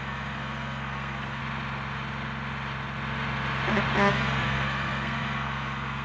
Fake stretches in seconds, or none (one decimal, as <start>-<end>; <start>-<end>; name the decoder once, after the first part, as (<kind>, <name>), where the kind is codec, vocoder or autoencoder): 0.0-1.4 (codec, SNAC); 4.1-6.0